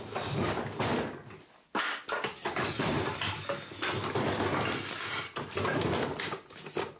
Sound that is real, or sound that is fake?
real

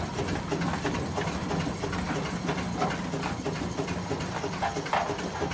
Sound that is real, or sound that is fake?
real